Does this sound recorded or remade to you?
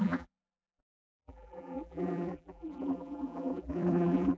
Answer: remade